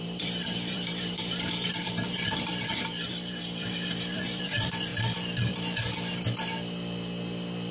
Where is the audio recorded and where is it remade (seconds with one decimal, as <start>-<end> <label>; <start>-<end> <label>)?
0.0-4.9 remade; 4.9-7.7 recorded

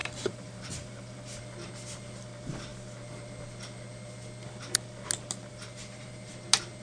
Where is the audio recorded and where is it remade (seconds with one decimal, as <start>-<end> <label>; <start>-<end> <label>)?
0.0-1.4 remade; 1.4-5.5 recorded; 5.5-6.3 remade; 6.3-6.8 recorded

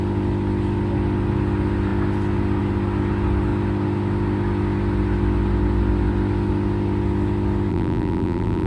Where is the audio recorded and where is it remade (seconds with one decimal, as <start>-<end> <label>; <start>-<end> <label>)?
0.0-7.7 recorded; 7.7-8.7 remade

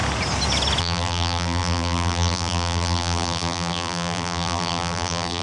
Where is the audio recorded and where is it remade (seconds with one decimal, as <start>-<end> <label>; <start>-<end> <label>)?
0.0-0.8 recorded; 0.8-5.4 remade

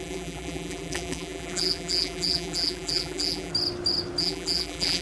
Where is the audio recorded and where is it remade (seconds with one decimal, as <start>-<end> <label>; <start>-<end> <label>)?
0.0-3.5 remade; 3.5-4.2 recorded; 4.2-5.0 remade

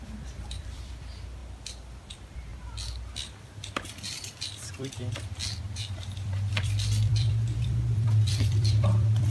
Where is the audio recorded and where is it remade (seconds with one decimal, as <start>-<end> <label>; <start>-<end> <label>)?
0.0-1.4 remade; 1.4-2.1 recorded; 2.1-2.5 remade; 2.5-3.4 recorded; 3.4-5.0 remade; 5.0-5.6 recorded; 5.6-9.3 remade